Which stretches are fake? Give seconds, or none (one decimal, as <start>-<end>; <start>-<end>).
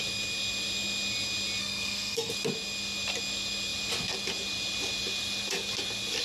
1.6-2.3